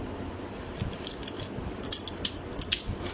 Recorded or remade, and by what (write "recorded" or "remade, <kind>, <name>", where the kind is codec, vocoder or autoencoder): recorded